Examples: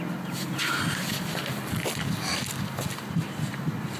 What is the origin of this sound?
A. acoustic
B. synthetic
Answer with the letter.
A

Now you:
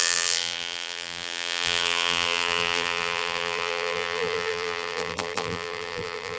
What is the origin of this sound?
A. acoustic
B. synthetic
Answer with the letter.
B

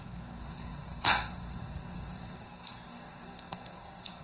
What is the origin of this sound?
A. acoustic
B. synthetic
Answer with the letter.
B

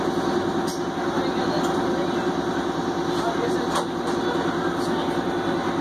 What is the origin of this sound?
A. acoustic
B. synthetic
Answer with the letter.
A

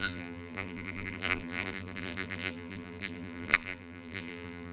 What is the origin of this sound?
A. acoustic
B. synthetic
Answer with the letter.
B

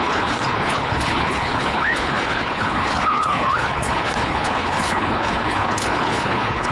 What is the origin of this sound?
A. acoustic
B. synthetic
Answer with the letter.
B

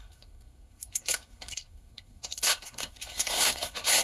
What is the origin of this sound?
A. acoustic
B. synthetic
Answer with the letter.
B